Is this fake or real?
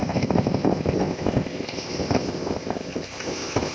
fake